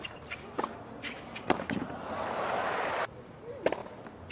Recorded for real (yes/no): yes